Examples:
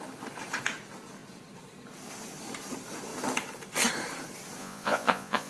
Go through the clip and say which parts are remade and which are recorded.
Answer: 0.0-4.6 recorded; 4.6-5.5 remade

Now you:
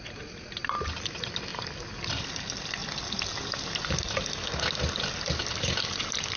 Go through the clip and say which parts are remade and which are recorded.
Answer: 0.0-6.4 recorded